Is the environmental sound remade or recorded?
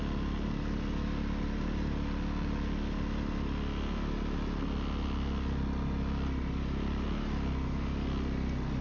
recorded